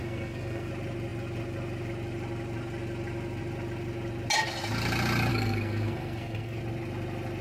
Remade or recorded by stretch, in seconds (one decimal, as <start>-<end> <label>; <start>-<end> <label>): 0.0-0.7 remade; 0.7-5.3 recorded; 5.3-6.6 remade; 6.6-7.4 recorded